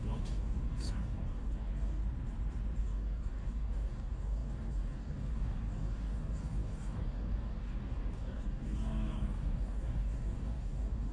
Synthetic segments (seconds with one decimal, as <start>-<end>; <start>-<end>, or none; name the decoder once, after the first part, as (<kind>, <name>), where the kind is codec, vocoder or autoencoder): 0.0-2.0 (codec, DAC); 2.8-11.1